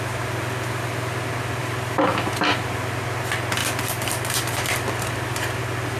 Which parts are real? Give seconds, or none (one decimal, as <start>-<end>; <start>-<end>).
0.0-1.6; 2.6-3.6; 5.6-6.0